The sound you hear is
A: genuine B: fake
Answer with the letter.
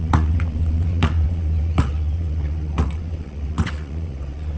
B